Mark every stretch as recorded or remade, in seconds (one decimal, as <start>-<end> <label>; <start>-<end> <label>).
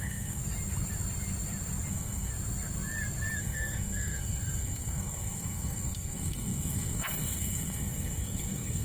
0.0-0.4 remade; 0.4-1.9 recorded; 1.9-2.3 remade; 2.3-3.4 recorded; 3.4-8.8 remade